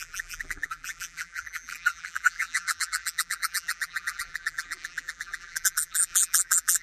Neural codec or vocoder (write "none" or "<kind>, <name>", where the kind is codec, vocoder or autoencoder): vocoder, BigVGAN v2